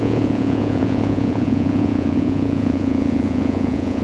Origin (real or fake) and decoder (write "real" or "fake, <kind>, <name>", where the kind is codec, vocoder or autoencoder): fake, vocoder, Vocos